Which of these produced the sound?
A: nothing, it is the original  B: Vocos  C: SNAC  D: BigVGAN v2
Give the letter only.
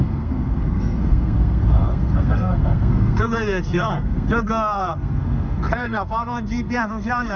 C